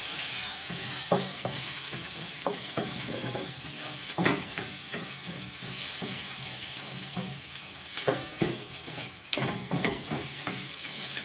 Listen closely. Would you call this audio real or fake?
fake